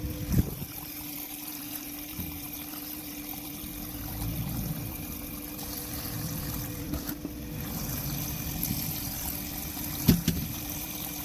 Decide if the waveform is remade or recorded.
remade